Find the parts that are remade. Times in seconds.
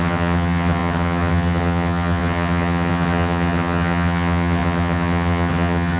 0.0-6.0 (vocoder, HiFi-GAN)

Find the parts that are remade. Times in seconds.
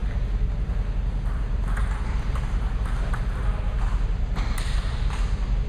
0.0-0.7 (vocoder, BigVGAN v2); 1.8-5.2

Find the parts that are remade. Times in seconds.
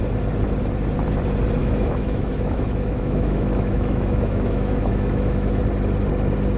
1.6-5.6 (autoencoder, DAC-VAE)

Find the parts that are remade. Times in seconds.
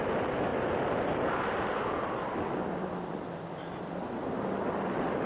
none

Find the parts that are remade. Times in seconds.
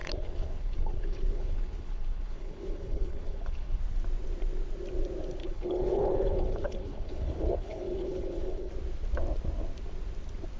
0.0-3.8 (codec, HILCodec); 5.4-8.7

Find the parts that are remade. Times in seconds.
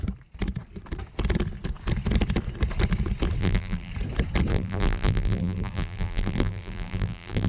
3.4-3.9 (vocoder, BigVGAN v2); 4.5-7.5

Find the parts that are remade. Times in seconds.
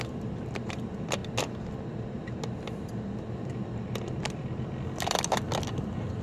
0.0-1.2 (vocoder, BigVGAN v2); 3.2-6.2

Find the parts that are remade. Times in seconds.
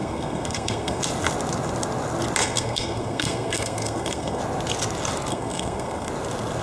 0.0-1.0 (codec, SNAC); 2.4-4.4; 5.3-6.1